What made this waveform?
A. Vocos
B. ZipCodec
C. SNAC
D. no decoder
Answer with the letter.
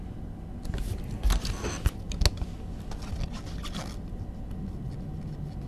D